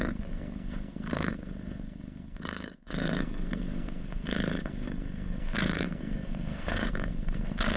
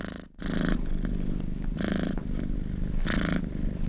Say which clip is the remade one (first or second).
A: first